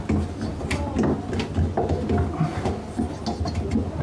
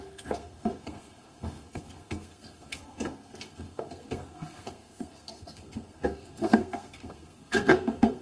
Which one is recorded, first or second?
first